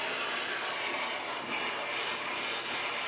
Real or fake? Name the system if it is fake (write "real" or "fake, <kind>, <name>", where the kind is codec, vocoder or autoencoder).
fake, vocoder, BigVGAN v2